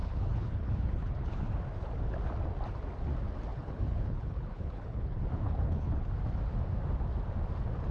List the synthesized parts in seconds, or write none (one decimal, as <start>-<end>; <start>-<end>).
0.0-1.5; 3.5-6.1